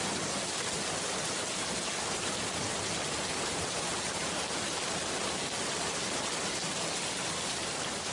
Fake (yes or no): no